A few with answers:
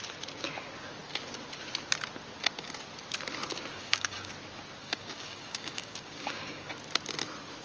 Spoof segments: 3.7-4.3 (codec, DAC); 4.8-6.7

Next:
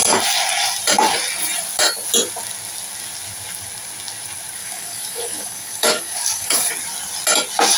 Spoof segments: 4.6-6.7 (codec, DAC)

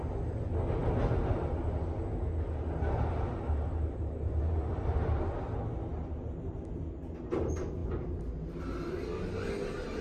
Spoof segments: none

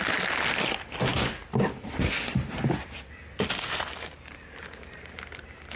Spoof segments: none

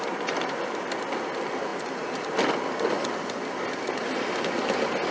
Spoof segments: none